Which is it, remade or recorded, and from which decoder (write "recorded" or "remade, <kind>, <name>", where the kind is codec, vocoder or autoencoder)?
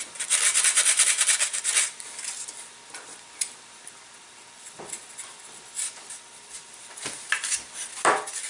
recorded